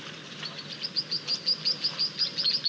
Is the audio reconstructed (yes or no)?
no